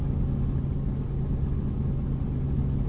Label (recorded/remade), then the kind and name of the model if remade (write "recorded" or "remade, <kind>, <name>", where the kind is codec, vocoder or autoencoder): recorded